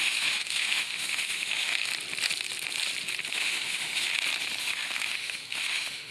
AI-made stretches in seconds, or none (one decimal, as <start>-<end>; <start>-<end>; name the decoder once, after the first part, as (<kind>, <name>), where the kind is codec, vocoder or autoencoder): 0.0-1.9 (autoencoder, DAC-VAE); 3.3-4.1; 4.6-6.1